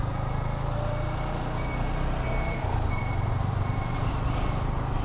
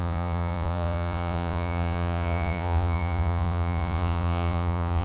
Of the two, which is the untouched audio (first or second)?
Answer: first